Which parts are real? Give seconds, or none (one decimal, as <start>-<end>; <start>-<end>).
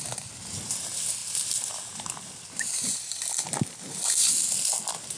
0.0-5.2